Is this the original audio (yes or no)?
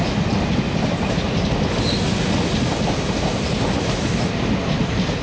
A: yes